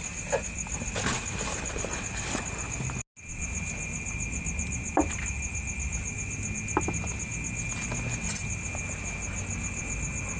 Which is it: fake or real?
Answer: real